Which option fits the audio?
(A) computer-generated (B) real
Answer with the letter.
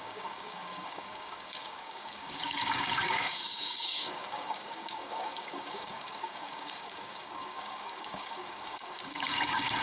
A